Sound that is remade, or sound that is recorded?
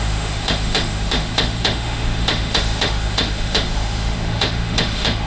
remade